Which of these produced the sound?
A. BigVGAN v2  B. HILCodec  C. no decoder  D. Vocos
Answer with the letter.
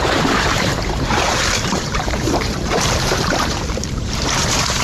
A